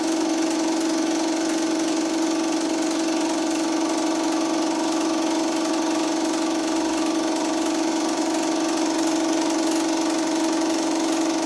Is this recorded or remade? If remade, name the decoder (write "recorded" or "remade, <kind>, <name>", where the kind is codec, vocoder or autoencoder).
recorded